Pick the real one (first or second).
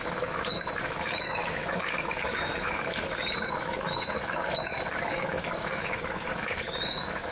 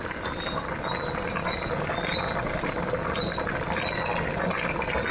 second